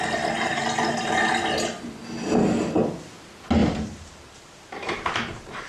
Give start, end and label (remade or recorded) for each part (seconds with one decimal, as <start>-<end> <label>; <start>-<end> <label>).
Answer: 0.0-3.6 recorded; 3.6-5.7 remade

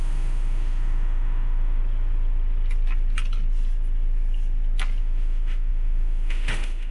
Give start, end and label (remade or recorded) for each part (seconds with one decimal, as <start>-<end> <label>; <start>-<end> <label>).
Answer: 0.0-1.8 remade; 1.8-5.0 recorded; 5.0-6.9 remade

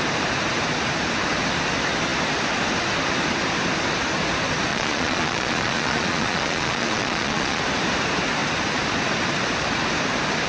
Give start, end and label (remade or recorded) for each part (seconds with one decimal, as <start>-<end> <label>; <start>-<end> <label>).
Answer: 0.0-4.7 recorded; 4.7-7.6 remade; 7.6-10.5 recorded